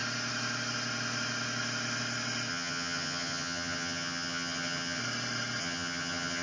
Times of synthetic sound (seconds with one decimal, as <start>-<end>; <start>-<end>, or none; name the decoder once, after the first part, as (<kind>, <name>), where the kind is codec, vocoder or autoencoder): 2.5-5.0 (vocoder, HiFi-GAN); 5.6-6.4